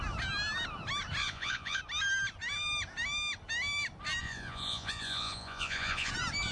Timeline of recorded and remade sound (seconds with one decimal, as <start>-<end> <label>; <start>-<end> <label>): 0.0-1.2 recorded; 1.2-1.8 remade; 1.8-4.2 recorded; 4.2-6.1 remade; 6.1-6.5 recorded

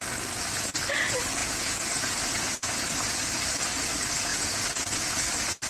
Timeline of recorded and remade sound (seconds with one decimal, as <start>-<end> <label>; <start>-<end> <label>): 0.0-1.4 recorded; 1.4-3.4 remade; 3.4-4.3 recorded; 4.3-5.3 remade; 5.3-5.7 recorded